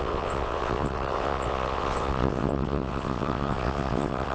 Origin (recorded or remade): remade